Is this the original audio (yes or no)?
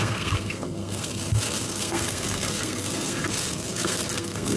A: no